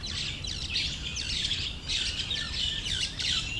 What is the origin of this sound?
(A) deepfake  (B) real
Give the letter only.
B